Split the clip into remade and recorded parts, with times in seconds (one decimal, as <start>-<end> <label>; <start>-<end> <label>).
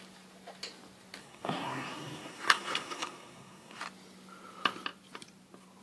0.0-1.2 recorded; 1.2-3.8 remade; 3.8-5.8 recorded